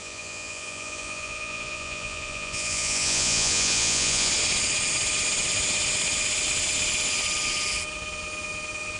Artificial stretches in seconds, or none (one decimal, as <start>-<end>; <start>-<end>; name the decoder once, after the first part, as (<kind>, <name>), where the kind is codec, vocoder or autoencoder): 0.0-4.3 (vocoder, Vocos)